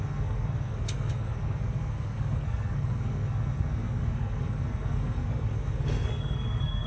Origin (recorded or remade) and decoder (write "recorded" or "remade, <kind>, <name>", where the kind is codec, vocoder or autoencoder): remade, codec, SNAC